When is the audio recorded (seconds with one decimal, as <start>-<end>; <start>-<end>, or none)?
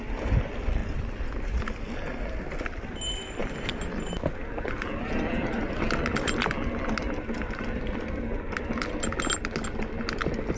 0.0-10.6